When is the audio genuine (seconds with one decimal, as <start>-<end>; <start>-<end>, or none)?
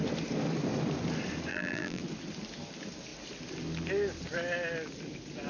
0.0-1.5; 2.0-5.5